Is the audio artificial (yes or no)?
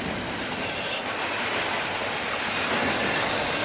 no